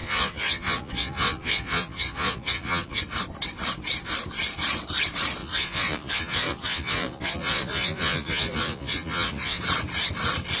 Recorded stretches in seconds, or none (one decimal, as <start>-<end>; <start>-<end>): 3.0-5.4; 9.6-10.6